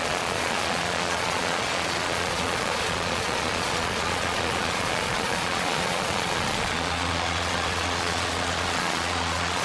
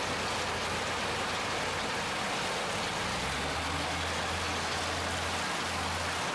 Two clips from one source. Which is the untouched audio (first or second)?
second